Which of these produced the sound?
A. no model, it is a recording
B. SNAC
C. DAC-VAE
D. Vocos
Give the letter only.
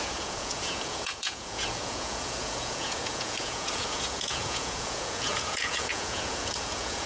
D